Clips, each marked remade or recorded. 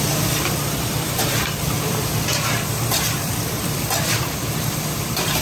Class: remade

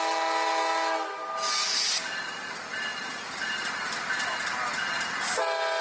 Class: recorded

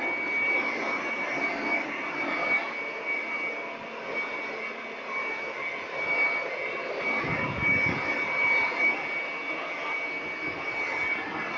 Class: recorded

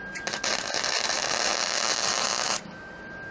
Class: recorded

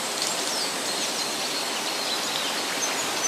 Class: recorded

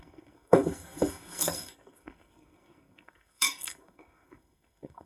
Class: remade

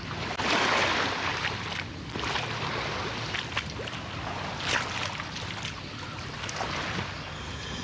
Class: recorded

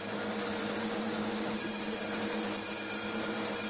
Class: remade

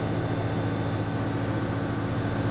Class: recorded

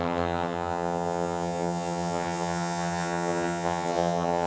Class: remade